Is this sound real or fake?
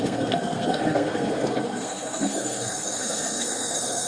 fake